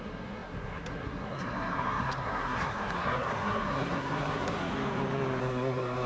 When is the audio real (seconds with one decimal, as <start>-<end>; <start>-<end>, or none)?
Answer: 4.7-5.4